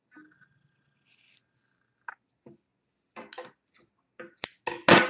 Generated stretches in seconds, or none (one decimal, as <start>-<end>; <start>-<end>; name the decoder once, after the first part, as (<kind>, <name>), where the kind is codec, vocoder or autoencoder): none